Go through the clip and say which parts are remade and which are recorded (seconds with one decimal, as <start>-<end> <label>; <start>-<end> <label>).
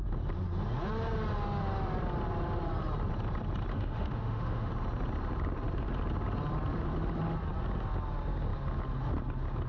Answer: 0.0-3.7 recorded; 3.7-4.7 remade; 4.7-9.7 recorded